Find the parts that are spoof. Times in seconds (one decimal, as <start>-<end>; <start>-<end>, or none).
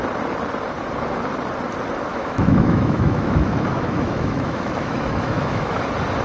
2.1-5.8